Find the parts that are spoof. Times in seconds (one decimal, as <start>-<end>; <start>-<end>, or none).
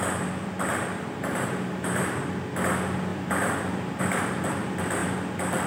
0.7-2.3; 3.1-4.0